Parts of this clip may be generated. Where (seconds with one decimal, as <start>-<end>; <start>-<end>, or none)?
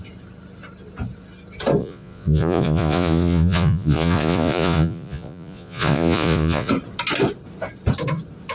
1.8-6.7